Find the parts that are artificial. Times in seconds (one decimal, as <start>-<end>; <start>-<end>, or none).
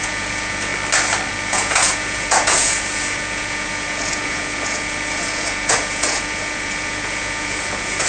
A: 0.0-0.7; 1.3-8.1